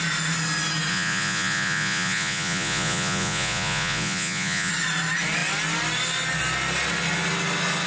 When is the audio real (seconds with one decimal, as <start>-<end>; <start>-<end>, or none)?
0.0-0.9; 4.7-7.9